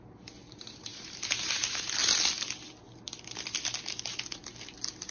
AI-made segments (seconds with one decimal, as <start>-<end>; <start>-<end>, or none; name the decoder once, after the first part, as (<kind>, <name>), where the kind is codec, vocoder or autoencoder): 0.0-2.0 (vocoder, BigVGAN v2)